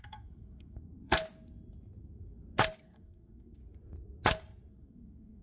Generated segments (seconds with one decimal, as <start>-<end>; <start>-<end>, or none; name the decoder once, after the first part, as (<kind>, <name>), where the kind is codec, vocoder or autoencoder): 0.0-1.2 (codec, SNAC); 2.8-3.6; 4.7-5.4

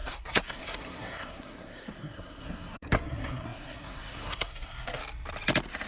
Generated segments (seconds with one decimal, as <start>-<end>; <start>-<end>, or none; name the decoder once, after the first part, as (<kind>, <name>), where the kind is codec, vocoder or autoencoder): 0.0-5.0 (codec, SNAC)

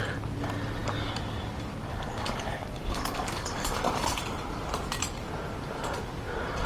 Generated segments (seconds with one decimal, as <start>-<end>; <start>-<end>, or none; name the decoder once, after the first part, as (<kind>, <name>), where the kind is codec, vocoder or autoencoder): 1.9-4.2 (codec, DAC)

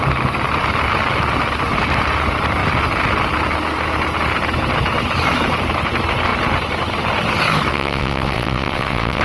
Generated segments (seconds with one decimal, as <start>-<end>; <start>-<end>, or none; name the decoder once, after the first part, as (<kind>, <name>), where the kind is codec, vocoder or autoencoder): 7.7-9.2 (vocoder, WaveNeXt)

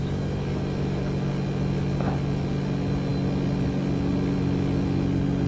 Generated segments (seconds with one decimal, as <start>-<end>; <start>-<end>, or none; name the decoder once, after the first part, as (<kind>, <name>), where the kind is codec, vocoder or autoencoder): 0.0-1.0 (autoencoder, DAC-VAE)

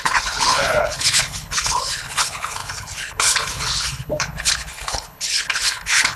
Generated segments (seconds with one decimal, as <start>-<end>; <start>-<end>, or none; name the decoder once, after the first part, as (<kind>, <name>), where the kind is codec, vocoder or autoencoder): 0.0-6.2 (codec, HILCodec)